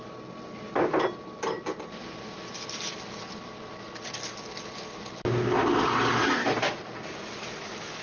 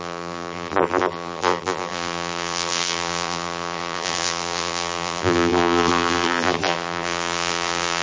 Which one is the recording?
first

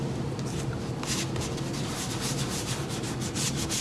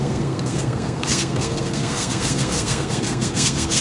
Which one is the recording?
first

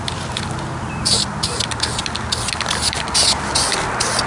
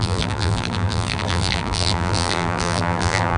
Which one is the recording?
first